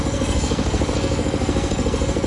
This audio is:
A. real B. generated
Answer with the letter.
B